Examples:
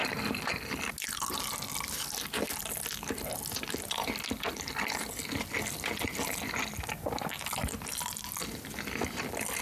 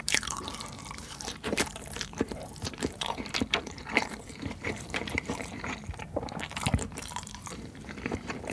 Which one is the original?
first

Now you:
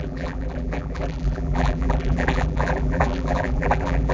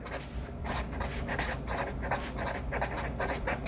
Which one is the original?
second